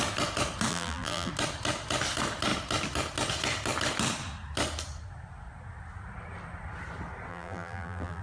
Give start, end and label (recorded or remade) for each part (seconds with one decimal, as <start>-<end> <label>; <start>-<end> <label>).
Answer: 0.0-0.7 recorded; 0.7-1.3 remade; 1.3-7.3 recorded; 7.3-8.2 remade